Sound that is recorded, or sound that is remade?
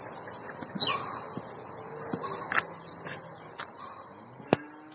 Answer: recorded